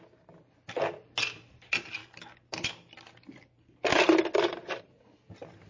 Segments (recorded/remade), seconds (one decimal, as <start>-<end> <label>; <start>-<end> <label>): 0.0-5.7 recorded